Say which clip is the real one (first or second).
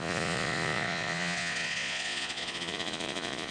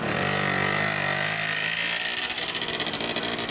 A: second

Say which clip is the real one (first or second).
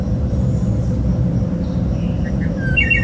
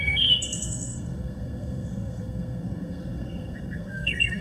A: first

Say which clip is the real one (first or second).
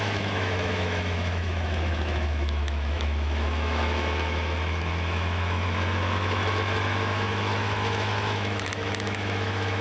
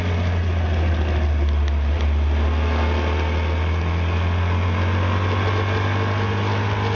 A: second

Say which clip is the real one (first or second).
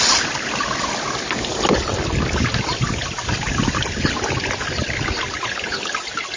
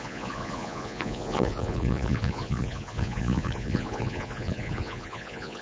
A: first